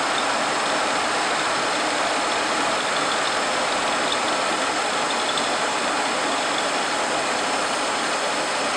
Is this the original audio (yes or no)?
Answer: yes